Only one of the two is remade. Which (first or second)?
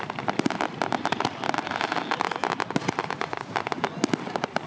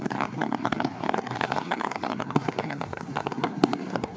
second